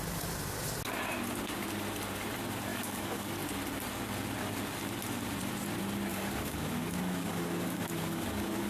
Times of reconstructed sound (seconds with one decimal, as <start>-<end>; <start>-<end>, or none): 2.7-3.3; 6.1-8.7